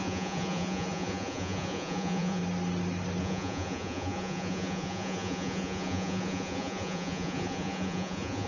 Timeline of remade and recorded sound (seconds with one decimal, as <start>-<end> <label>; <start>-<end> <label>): 0.0-2.4 remade; 2.4-3.2 recorded; 3.2-8.5 remade

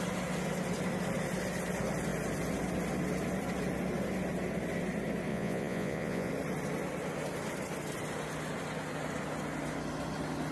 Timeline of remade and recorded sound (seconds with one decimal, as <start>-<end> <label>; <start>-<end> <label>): 0.0-5.3 recorded; 5.3-6.3 remade; 6.3-10.5 recorded

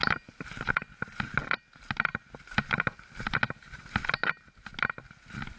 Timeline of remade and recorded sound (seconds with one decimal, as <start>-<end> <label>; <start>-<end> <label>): 0.0-5.6 recorded

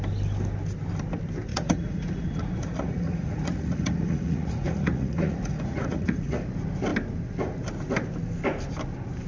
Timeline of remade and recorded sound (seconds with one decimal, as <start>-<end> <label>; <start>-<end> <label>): 0.0-1.5 recorded; 1.5-6.5 remade; 6.5-9.3 recorded

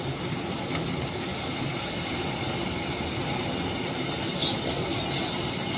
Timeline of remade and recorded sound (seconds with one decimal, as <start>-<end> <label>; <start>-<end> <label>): 0.0-5.8 recorded

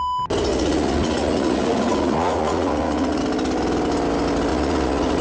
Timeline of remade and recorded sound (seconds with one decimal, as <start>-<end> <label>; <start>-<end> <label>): 0.0-0.5 recorded; 0.5-3.2 remade; 3.2-4.5 recorded; 4.5-5.2 remade